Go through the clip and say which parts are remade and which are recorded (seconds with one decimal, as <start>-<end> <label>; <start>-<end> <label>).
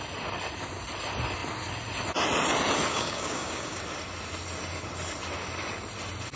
0.0-2.9 recorded; 2.9-3.8 remade; 3.8-6.4 recorded